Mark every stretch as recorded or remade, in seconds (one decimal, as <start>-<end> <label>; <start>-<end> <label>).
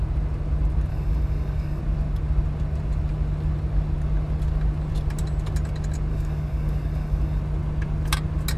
0.0-0.9 recorded; 0.9-1.8 remade; 1.8-6.1 recorded; 6.1-7.4 remade; 7.4-8.6 recorded